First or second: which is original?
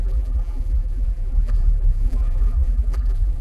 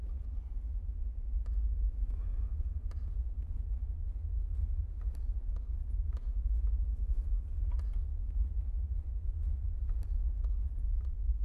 second